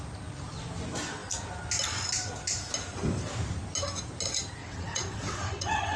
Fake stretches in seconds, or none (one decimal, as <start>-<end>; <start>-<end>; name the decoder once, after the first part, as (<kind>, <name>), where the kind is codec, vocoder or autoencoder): 4.6-6.0 (vocoder, WaveNeXt)